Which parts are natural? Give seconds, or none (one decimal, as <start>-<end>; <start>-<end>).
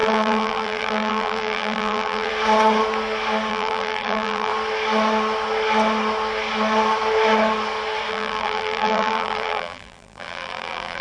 2.3-3.5; 4.5-8.1